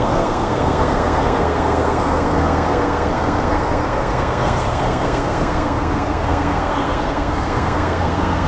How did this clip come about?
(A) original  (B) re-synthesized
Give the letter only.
B